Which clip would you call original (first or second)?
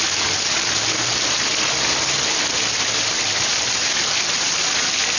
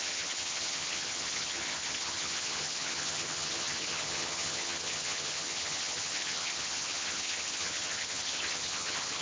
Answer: first